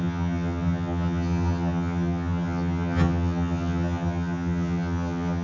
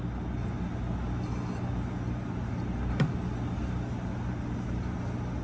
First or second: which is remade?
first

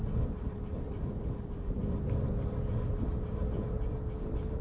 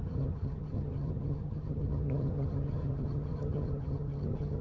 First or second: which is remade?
second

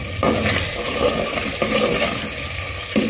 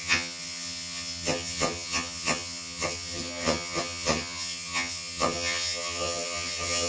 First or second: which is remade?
second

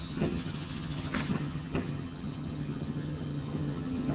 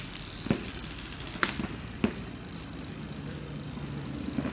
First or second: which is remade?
first